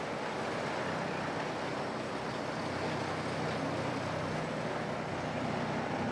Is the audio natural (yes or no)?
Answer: yes